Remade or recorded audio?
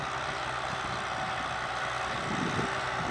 recorded